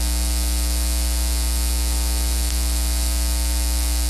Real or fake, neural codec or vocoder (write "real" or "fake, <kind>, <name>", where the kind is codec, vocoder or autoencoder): real